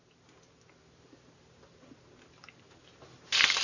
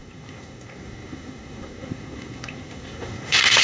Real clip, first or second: first